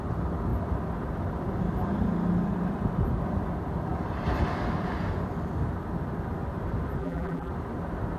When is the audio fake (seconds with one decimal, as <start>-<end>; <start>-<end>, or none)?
7.0-7.5